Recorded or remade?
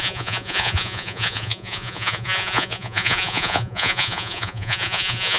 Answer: remade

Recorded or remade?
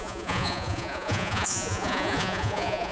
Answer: remade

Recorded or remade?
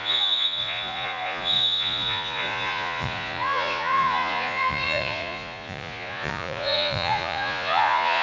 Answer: remade